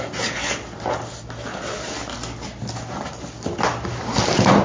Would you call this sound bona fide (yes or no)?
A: yes